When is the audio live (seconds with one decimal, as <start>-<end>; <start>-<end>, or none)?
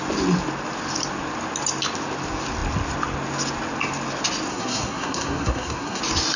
0.0-4.5; 6.0-6.4